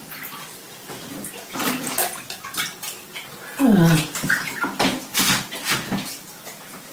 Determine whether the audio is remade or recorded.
recorded